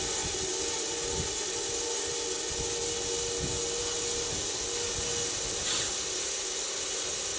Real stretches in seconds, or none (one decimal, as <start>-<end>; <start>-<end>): 0.0-7.4